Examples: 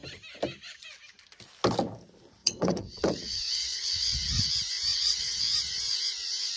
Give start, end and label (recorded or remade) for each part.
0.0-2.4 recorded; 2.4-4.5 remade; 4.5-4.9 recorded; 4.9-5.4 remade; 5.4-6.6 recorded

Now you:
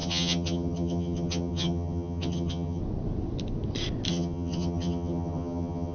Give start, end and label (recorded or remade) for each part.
0.0-2.8 remade; 2.8-4.1 recorded; 4.1-5.9 remade

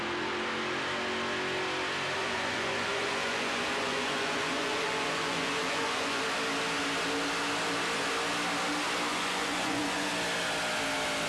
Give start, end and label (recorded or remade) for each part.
0.0-2.2 recorded; 2.2-6.2 remade; 6.2-9.1 recorded; 9.1-10.1 remade; 10.1-11.3 recorded